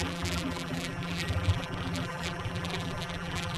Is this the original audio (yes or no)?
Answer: no